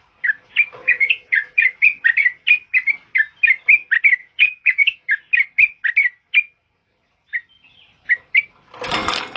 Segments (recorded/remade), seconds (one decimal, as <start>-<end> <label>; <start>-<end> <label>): 0.0-0.8 recorded; 0.8-1.7 remade; 1.7-4.2 recorded; 4.2-5.1 remade; 5.1-9.4 recorded